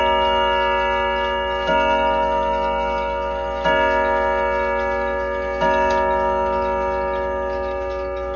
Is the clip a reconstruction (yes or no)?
no